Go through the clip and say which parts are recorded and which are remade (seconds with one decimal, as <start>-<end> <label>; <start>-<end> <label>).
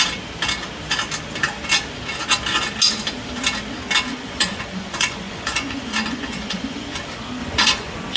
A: 0.0-4.1 recorded; 4.1-7.0 remade; 7.0-7.4 recorded; 7.4-8.2 remade